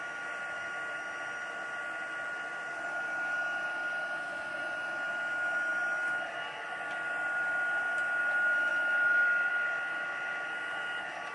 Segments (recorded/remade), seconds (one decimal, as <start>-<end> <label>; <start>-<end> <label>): 0.0-8.7 recorded; 8.7-9.5 remade; 9.5-11.3 recorded